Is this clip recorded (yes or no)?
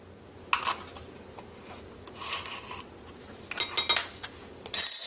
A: yes